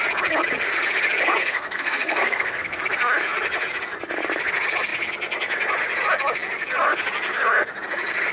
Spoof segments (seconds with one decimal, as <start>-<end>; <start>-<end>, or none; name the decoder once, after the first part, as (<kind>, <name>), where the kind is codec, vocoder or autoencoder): 1.4-2.8 (codec, SNAC)